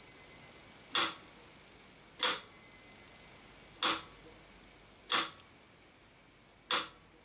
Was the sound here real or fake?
real